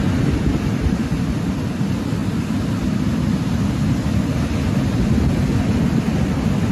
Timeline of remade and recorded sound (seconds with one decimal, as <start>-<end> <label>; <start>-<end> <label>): 0.0-6.7 recorded